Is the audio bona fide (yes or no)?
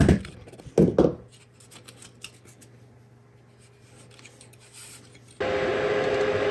yes